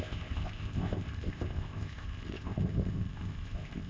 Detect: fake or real fake